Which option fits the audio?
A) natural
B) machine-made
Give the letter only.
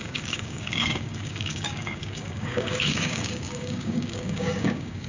B